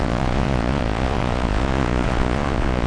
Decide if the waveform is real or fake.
fake